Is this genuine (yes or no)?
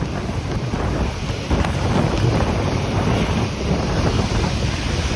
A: yes